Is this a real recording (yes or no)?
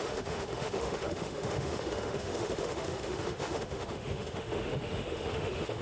no